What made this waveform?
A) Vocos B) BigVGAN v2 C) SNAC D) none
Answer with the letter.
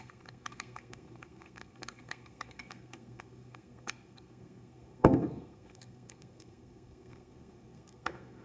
C